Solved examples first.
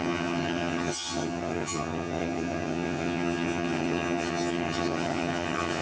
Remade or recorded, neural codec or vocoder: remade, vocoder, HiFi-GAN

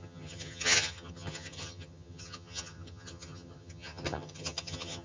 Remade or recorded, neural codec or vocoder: remade, vocoder, HiFi-GAN